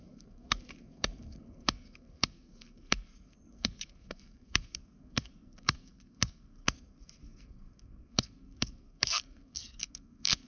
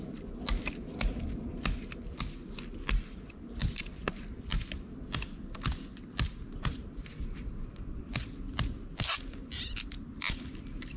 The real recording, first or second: second